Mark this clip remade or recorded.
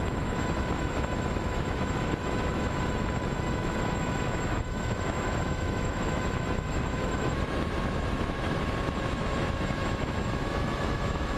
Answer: remade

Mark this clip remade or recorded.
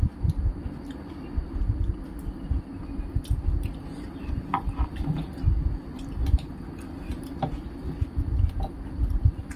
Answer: recorded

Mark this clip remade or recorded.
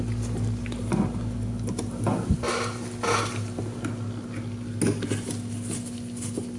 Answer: recorded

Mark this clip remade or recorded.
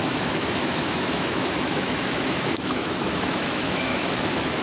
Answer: remade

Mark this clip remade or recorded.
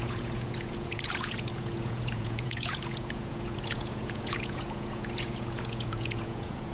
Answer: remade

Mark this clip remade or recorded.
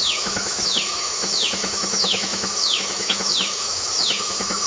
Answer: remade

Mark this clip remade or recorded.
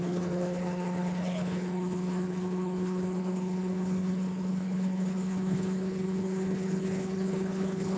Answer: remade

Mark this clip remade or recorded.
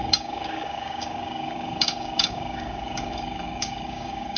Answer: remade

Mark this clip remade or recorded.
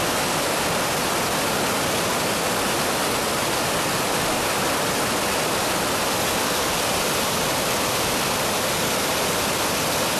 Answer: recorded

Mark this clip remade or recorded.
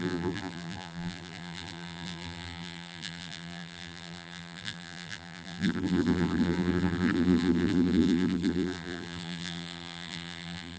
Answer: remade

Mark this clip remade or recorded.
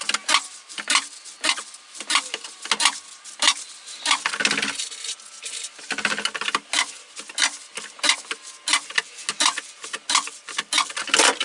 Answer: recorded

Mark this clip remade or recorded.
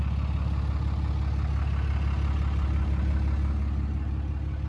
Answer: recorded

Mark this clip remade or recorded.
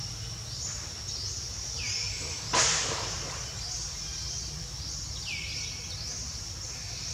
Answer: recorded